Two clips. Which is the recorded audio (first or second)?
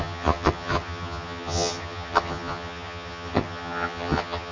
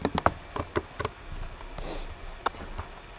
second